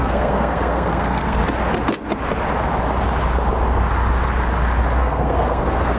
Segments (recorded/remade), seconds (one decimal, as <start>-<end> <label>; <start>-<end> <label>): 0.0-1.4 remade; 1.4-5.0 recorded; 5.0-6.0 remade